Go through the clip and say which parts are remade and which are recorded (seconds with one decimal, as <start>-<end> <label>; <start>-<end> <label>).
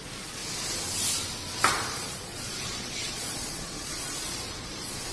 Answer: 0.0-0.4 remade; 0.4-1.7 recorded; 1.7-5.1 remade